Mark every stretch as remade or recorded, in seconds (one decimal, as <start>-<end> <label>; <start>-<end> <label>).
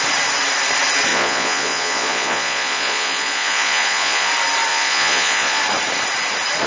0.0-1.1 recorded; 1.1-4.3 remade; 4.3-4.7 recorded; 4.7-5.6 remade; 5.6-6.7 recorded